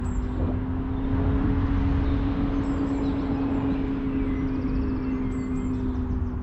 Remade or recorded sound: recorded